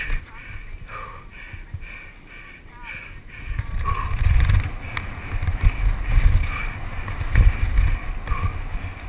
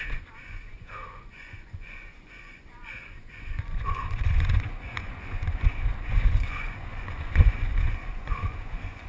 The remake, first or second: second